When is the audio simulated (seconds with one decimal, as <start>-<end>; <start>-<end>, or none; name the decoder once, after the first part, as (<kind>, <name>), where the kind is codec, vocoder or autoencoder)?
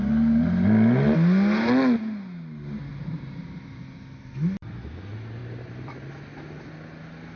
2.9-3.8 (vocoder, BigVGAN v2); 5.4-6.1